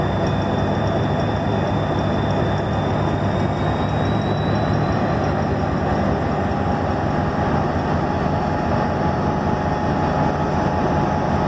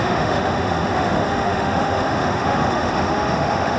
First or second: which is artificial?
second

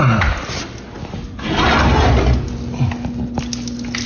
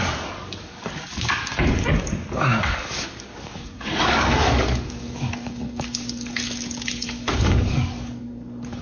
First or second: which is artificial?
second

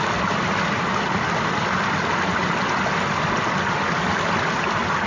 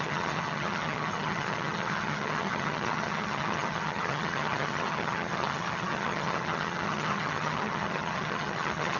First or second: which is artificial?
second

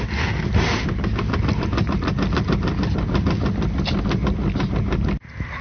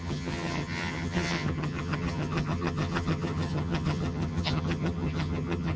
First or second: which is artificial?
second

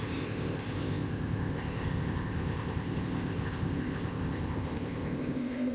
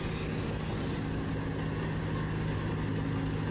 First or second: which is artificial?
first